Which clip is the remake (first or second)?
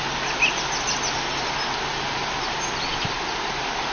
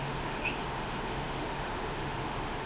second